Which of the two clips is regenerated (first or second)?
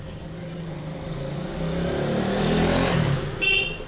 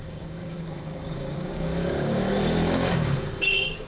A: second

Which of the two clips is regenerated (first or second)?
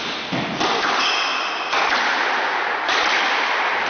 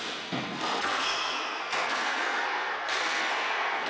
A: second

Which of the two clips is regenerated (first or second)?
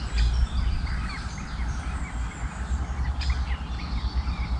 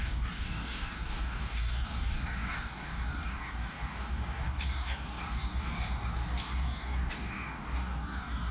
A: second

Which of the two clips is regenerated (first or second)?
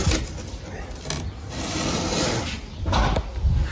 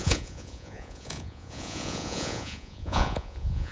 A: second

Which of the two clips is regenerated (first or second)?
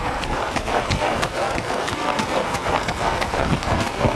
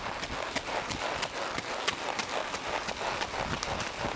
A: first